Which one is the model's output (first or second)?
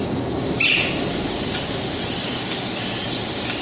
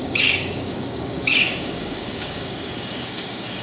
second